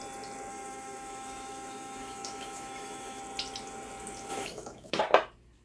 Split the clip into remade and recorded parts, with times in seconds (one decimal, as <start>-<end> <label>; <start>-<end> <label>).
0.0-0.5 recorded; 0.5-3.2 remade; 3.2-4.3 recorded; 4.3-5.0 remade; 5.0-5.6 recorded

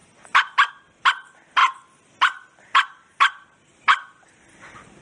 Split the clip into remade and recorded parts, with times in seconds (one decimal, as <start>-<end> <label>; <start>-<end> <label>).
0.0-5.0 remade

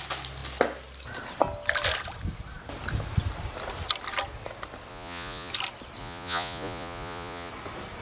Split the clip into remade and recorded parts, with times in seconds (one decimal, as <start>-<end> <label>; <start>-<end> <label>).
0.0-4.9 recorded; 4.9-5.5 remade; 5.5-6.0 recorded; 6.0-7.5 remade; 7.5-8.0 recorded